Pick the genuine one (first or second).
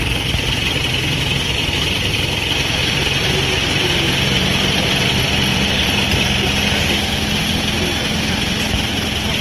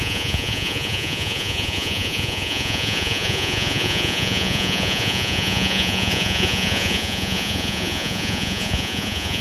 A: first